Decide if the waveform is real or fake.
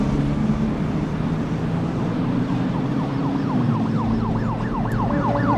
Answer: real